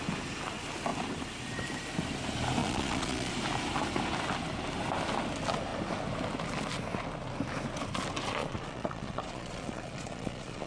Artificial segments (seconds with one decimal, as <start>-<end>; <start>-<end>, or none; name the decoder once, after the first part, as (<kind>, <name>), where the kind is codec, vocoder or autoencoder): 2.6-3.3 (vocoder, Vocos); 8.4-10.7